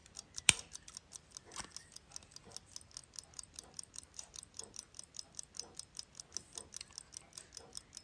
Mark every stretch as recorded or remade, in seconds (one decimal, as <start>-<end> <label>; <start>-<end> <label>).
0.0-0.7 remade; 0.7-3.0 recorded; 3.0-6.2 remade; 6.2-8.0 recorded

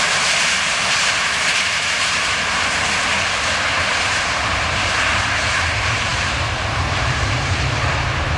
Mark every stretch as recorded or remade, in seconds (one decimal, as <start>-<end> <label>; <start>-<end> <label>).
0.0-3.0 remade; 3.0-3.5 recorded; 3.5-8.4 remade

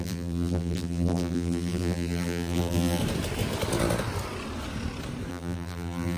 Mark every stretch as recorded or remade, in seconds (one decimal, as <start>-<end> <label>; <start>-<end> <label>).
0.0-3.0 remade; 3.0-5.3 recorded; 5.3-6.2 remade